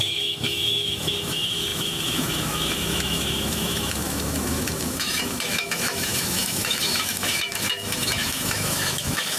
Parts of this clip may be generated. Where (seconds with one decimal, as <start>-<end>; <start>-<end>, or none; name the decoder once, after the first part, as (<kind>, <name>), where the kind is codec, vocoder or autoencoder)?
0.0-9.4 (autoencoder, DAC-VAE)